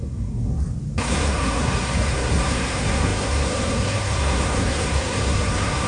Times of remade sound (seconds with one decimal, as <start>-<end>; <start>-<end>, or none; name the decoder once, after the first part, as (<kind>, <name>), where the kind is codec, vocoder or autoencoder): 0.0-0.5 (codec, SNAC); 1.0-5.9